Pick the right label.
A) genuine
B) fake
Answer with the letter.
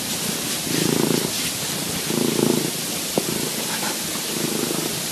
A